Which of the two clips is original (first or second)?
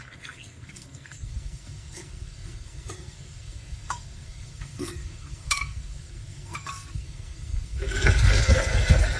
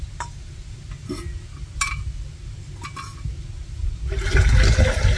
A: second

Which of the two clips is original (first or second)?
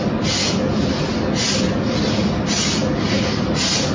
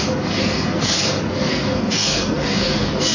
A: first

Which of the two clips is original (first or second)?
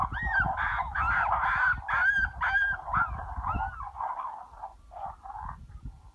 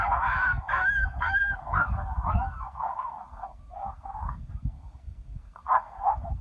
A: first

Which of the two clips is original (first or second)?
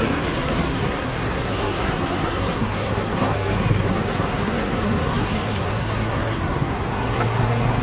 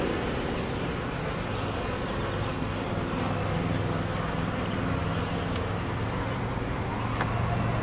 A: second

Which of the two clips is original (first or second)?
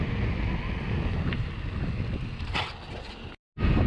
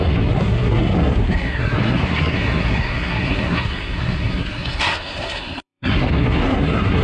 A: first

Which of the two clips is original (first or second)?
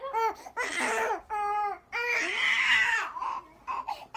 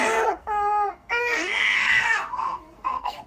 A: first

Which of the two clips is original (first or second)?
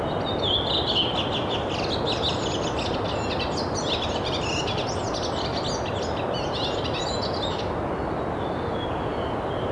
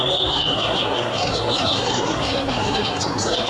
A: first